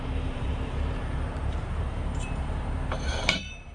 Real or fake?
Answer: fake